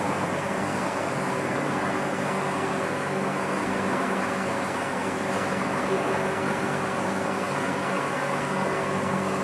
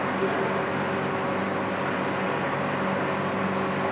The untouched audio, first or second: second